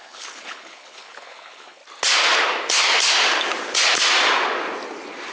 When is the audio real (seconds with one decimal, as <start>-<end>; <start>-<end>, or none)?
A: 1.8-5.3